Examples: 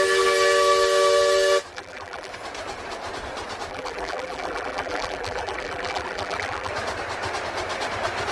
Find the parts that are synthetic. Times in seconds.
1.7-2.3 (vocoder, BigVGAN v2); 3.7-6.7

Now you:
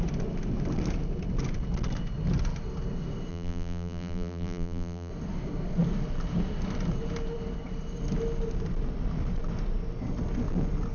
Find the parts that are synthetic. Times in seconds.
3.3-5.1 (vocoder, BigVGAN v2)

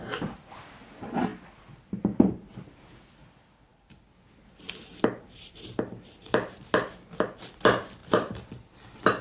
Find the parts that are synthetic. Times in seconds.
8.0-8.5 (vocoder, BigVGAN v2)

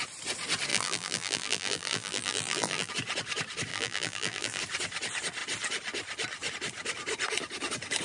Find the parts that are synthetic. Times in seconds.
0.7-2.9 (vocoder, BigVGAN v2); 3.7-4.6

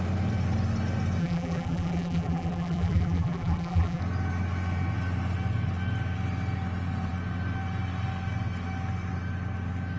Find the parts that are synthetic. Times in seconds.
1.2-4.0 (vocoder, BigVGAN v2)